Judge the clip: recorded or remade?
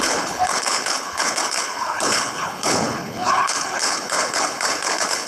remade